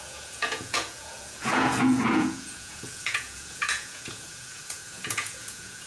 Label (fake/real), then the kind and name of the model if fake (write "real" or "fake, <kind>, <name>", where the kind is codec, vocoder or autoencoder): fake, vocoder, Vocos